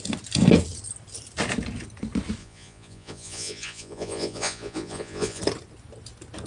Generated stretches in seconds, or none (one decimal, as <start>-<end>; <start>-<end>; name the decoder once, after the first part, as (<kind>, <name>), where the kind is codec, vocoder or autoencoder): 2.4-5.4 (vocoder, Vocos)